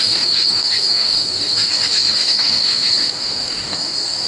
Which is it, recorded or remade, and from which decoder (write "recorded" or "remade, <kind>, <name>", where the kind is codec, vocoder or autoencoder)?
remade, codec, DAC